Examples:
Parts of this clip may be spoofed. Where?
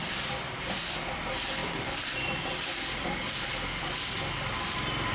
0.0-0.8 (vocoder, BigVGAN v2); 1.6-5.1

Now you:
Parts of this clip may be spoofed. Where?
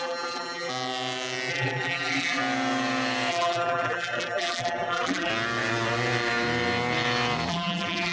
0.0-0.7 (vocoder, BigVGAN v2); 1.5-2.4; 3.3-5.3; 7.5-8.1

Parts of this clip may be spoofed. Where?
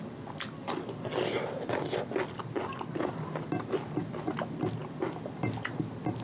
none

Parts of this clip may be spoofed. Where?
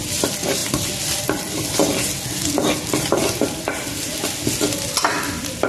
0.6-1.6 (vocoder, BigVGAN v2)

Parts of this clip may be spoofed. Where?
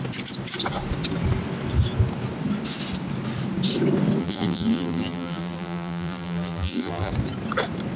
4.2-7.1 (vocoder, BigVGAN v2)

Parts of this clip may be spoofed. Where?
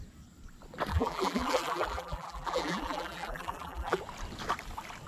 0.9-4.0 (vocoder, BigVGAN v2)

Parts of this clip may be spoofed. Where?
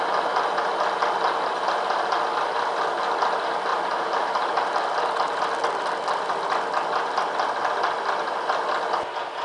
3.7-4.6 (vocoder, BigVGAN v2)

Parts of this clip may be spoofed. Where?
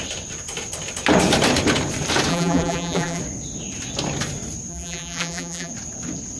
2.3-3.2 (vocoder, BigVGAN v2); 4.7-5.7